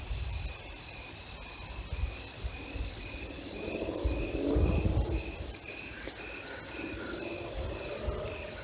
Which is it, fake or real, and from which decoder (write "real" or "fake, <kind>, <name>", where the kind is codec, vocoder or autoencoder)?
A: real